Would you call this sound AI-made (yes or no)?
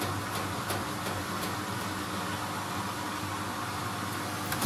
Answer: no